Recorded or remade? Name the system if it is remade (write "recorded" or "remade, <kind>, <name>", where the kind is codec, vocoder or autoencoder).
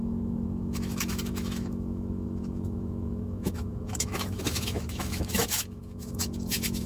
remade, autoencoder, DAC-VAE